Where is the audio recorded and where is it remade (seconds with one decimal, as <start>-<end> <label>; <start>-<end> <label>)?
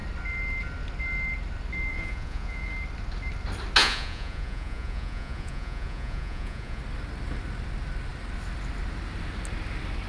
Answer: 0.0-1.9 recorded; 1.9-2.7 remade; 2.7-3.8 recorded; 3.8-6.8 remade; 6.8-10.1 recorded